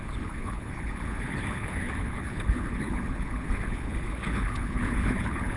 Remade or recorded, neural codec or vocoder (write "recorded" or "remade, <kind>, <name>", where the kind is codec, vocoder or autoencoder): remade, codec, HILCodec